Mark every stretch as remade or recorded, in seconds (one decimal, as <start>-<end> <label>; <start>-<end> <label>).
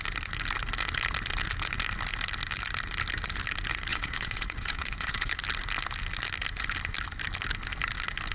0.0-3.9 recorded; 3.9-5.3 remade; 5.3-8.3 recorded